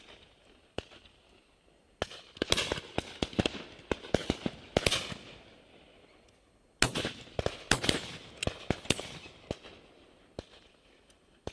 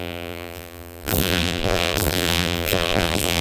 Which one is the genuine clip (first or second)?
first